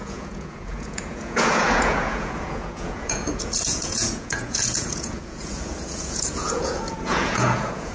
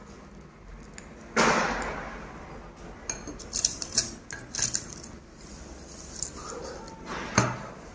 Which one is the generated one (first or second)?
first